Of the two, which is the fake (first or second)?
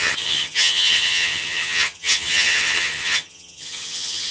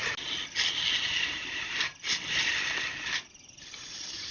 first